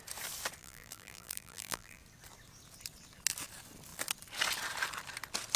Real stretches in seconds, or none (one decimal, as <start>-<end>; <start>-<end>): 0.0-0.6; 2.0-5.6